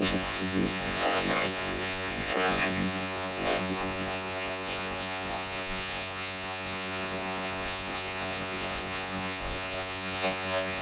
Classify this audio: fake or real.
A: fake